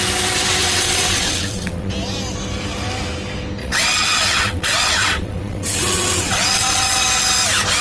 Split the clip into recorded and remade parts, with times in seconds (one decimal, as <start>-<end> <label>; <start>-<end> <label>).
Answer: 0.0-0.6 recorded; 0.6-1.9 remade; 1.9-3.6 recorded; 3.6-7.0 remade; 7.0-7.8 recorded